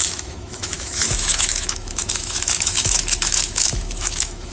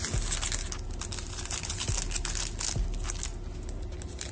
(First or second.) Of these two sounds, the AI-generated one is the first